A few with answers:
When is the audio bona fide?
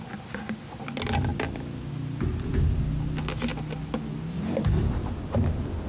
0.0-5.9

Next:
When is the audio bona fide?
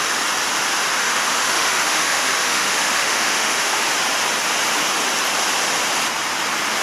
0.0-1.0; 3.8-6.8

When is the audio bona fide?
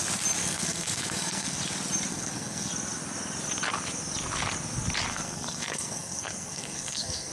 0.0-0.4; 1.6-2.1; 2.7-5.1